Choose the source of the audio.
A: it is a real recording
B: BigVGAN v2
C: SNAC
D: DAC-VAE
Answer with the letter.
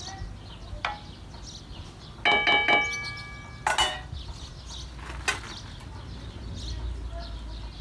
A